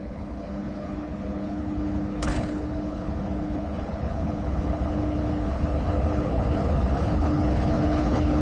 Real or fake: fake